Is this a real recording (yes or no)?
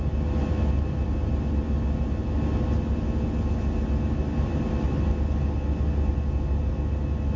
yes